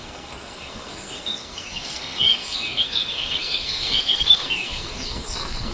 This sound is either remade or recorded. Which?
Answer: remade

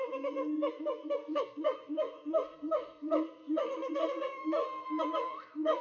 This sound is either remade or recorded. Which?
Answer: remade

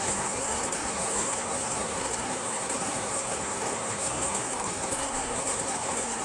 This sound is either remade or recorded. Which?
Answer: remade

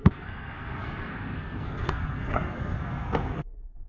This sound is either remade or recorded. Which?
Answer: remade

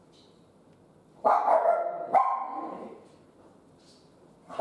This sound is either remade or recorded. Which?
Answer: recorded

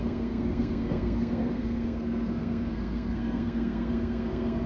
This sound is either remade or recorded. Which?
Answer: remade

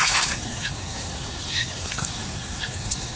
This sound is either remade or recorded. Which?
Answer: remade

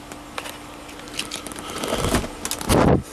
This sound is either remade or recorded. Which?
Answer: recorded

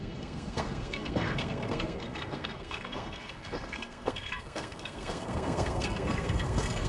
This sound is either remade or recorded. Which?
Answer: remade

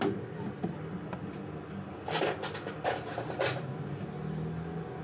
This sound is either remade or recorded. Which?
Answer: recorded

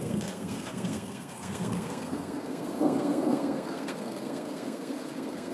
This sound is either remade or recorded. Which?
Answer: remade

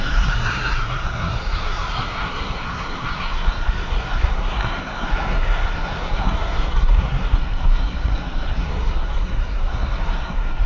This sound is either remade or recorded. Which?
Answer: remade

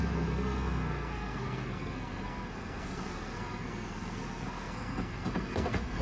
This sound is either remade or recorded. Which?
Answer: remade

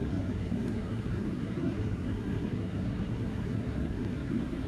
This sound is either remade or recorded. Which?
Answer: remade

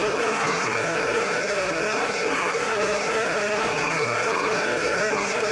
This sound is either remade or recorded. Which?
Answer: remade